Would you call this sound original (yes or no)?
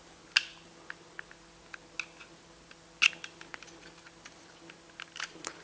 yes